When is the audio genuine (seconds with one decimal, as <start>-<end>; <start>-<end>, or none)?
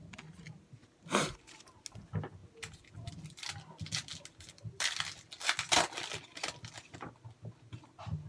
0.0-8.3